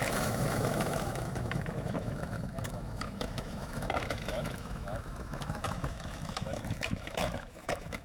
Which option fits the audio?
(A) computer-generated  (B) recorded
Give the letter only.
A